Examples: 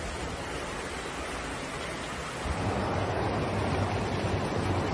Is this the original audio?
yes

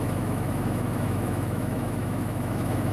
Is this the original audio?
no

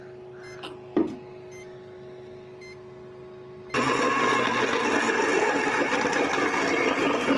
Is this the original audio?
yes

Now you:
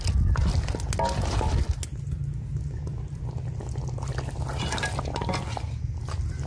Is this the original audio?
yes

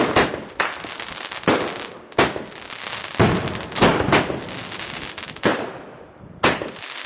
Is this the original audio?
yes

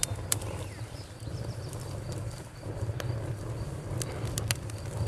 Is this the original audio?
yes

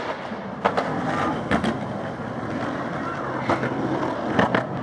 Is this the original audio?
yes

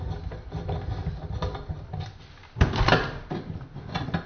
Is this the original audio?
yes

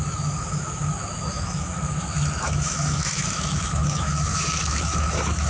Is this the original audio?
no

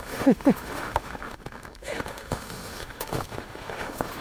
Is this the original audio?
no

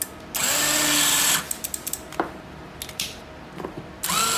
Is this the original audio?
yes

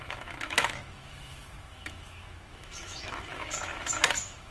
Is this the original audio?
no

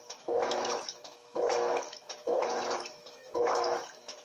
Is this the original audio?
no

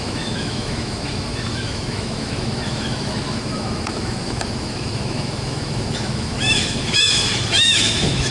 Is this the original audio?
no